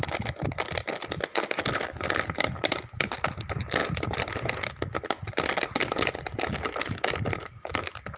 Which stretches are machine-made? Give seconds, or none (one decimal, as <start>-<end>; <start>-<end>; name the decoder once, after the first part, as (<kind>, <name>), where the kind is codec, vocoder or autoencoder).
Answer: 0.0-3.8 (vocoder, BigVGAN v2); 6.4-8.2